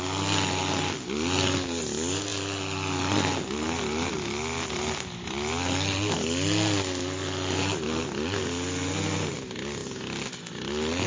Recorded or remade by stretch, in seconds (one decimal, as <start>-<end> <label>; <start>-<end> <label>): 0.0-11.1 recorded